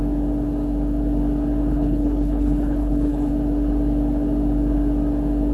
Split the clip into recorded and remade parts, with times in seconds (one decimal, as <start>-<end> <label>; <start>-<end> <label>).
0.0-1.7 recorded; 1.7-3.3 remade; 3.3-5.5 recorded